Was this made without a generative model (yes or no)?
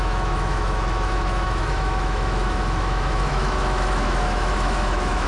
no